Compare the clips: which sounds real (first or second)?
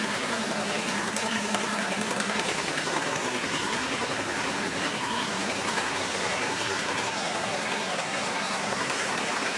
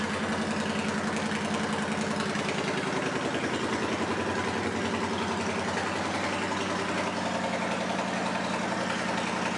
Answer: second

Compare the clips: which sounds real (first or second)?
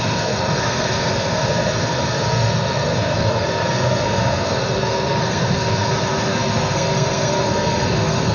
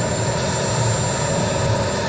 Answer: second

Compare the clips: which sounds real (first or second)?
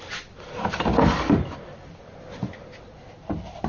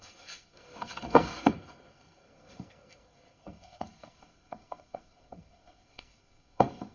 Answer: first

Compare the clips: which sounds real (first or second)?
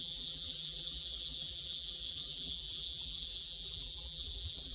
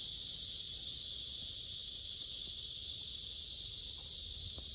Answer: second